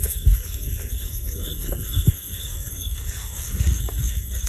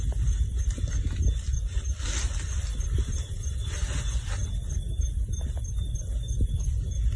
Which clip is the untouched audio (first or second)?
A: second